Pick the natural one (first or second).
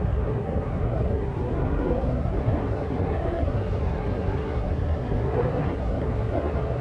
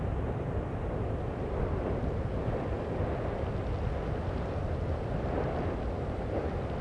second